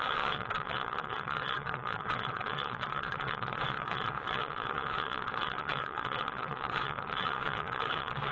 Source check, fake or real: fake